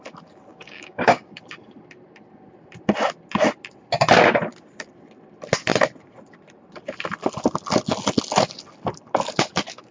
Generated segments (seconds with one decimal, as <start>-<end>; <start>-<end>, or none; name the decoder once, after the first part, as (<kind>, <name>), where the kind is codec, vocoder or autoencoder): 0.5-1.4 (codec, DAC)